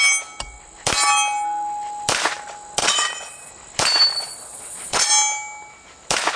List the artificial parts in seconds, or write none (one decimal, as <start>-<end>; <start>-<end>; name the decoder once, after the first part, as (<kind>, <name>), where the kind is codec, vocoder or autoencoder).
2.8-3.5 (vocoder, Vocos); 4.1-5.1